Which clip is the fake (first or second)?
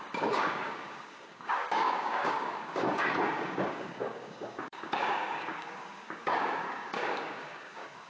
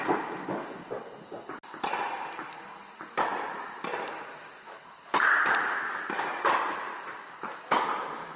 first